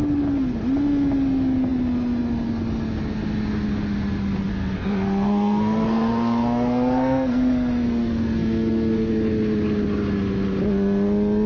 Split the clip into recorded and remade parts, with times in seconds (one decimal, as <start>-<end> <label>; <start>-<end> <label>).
0.0-4.5 recorded; 4.5-9.1 remade; 9.1-11.5 recorded